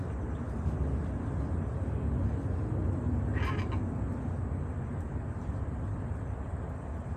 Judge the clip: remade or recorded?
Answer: recorded